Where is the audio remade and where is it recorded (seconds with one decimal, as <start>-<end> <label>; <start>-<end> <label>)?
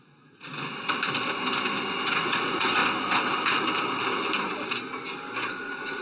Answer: 0.0-0.5 remade; 0.5-2.1 recorded; 2.1-2.8 remade; 2.8-5.5 recorded; 5.5-6.0 remade